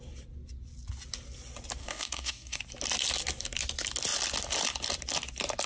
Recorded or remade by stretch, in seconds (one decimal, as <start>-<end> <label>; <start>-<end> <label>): 0.0-1.8 recorded; 1.8-2.6 remade; 2.6-5.7 recorded